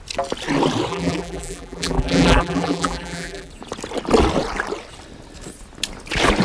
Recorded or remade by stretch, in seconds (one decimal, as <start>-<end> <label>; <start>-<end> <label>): 0.0-0.9 recorded; 0.9-3.5 remade; 3.5-6.4 recorded